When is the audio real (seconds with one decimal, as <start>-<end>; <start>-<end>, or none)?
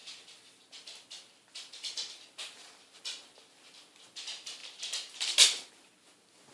0.0-6.5